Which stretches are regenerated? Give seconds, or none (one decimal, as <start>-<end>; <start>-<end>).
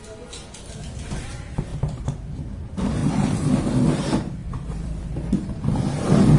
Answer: 1.7-2.3; 3.0-3.6; 4.4-5.8